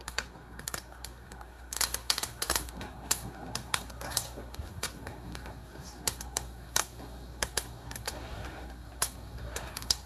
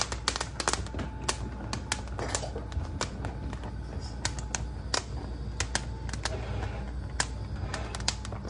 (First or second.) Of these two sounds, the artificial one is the first